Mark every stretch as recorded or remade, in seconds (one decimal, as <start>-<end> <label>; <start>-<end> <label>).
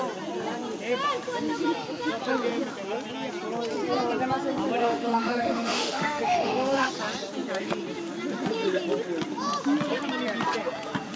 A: 0.0-4.8 recorded; 4.8-6.9 remade; 6.9-11.2 recorded